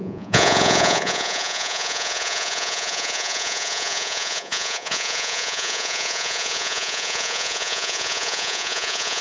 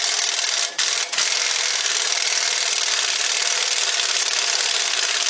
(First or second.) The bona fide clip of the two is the second